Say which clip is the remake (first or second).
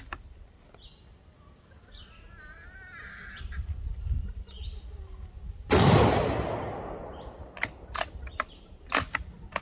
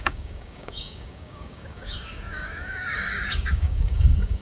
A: second